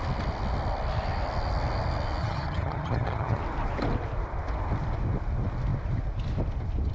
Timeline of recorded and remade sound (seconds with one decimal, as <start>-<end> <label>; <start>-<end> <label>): 0.0-2.2 recorded; 2.2-3.4 remade; 3.4-6.9 recorded